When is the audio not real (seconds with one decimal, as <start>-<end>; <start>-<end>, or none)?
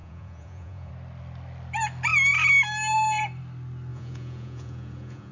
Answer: 0.0-0.9; 3.9-5.3